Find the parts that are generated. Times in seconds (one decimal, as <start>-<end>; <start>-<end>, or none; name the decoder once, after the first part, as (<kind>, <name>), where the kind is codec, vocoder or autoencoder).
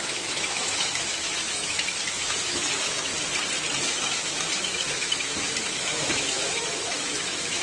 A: 0.0-3.1 (autoencoder, DAC-VAE); 3.8-7.6